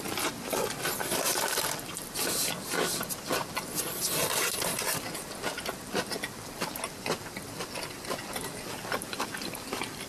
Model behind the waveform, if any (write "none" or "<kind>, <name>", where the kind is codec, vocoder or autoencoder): vocoder, BigVGAN v2